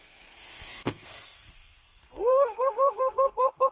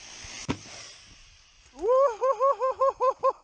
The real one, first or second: second